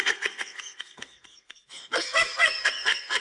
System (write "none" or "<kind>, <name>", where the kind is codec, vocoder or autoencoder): codec, SNAC